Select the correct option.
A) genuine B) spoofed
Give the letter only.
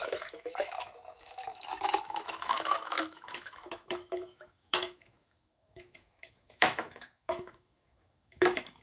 B